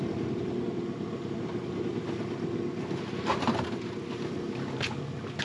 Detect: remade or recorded recorded